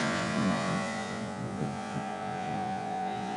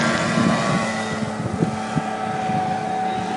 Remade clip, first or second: first